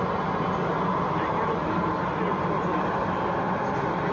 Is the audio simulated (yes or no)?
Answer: no